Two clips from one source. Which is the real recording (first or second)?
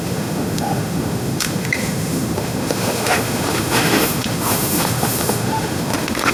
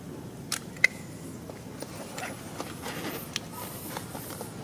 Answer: second